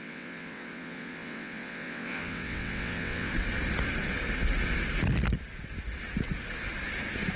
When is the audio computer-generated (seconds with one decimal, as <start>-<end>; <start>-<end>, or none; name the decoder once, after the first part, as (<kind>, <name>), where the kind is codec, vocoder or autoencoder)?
0.0-3.3 (vocoder, WaveNeXt)